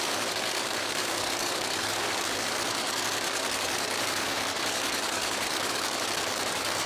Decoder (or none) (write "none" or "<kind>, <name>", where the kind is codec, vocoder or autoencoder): codec, DAC